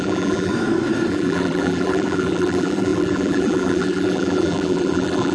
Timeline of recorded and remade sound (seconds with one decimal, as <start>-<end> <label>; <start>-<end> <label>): 0.0-0.5 remade; 0.5-1.1 recorded; 1.1-5.3 remade